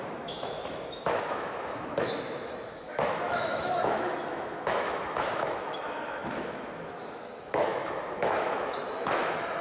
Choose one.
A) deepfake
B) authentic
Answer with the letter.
A